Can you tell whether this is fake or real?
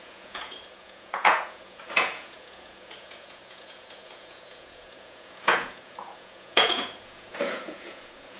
fake